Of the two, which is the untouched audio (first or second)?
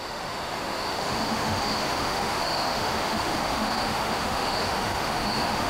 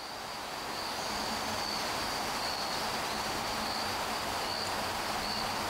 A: second